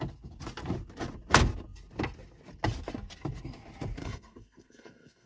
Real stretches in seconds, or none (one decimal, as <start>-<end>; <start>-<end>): 0.0-4.0